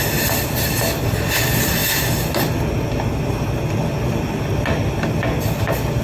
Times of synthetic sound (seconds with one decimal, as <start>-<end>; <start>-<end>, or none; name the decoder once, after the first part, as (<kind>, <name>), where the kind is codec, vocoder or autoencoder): none